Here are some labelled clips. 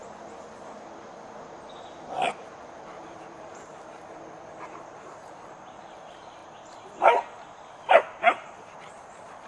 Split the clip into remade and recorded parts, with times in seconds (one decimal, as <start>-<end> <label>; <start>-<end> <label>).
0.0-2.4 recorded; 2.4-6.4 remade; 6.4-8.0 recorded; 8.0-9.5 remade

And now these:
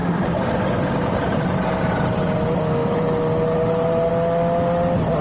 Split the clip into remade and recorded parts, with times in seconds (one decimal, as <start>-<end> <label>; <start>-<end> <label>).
0.0-1.9 remade; 1.9-2.8 recorded; 2.8-4.1 remade; 4.1-5.2 recorded

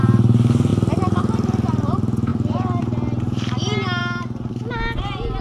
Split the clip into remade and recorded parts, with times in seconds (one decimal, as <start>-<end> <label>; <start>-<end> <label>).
0.0-5.4 recorded